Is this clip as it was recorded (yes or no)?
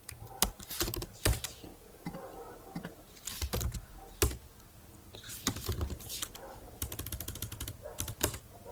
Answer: yes